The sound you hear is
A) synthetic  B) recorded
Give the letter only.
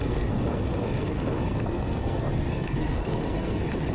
A